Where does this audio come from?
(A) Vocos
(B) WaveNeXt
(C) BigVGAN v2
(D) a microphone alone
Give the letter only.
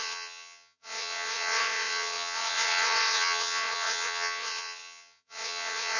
B